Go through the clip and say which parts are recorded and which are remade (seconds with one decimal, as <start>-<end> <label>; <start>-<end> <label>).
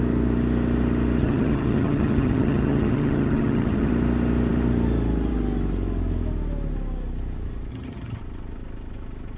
0.0-1.2 recorded; 1.2-3.9 remade; 3.9-7.7 recorded; 7.7-8.2 remade; 8.2-9.4 recorded